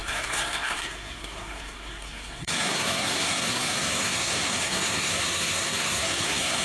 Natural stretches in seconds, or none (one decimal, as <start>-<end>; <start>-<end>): none